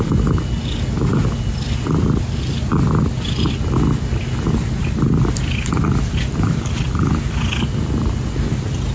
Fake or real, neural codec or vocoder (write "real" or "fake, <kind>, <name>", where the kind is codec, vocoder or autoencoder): real